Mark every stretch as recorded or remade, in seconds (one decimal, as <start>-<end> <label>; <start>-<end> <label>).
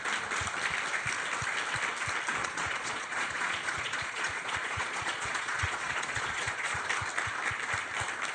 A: 0.0-2.4 recorded; 2.4-6.8 remade; 6.8-8.3 recorded